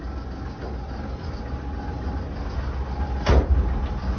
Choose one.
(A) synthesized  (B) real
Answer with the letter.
B